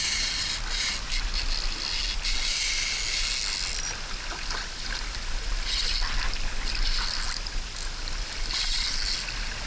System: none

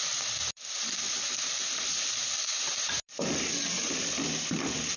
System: none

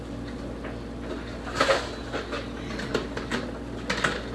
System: none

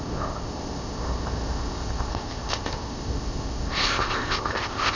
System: codec, ZipCodec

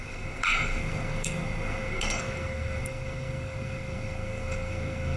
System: codec, SNAC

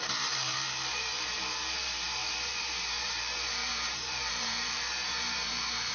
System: vocoder, BigVGAN v2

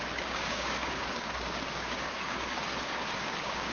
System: codec, DAC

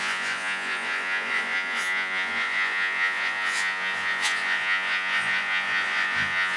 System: vocoder, Vocos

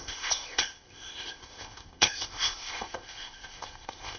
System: codec, ZipCodec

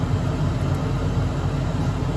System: none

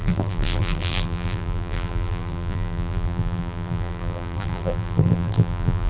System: vocoder, BigVGAN v2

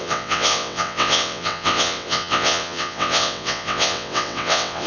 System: vocoder, WaveNeXt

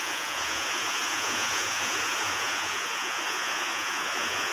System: vocoder, Vocos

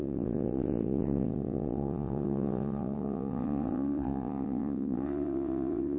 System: vocoder, WaveNeXt